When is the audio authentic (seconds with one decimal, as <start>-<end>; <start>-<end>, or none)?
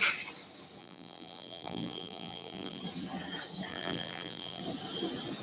0.0-0.8; 2.8-3.7; 4.6-5.4